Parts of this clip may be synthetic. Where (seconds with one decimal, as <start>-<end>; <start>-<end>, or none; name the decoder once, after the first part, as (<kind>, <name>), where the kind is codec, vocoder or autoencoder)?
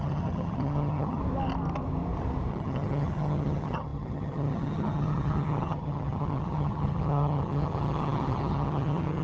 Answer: 0.0-1.2 (vocoder, HiFi-GAN); 2.5-9.2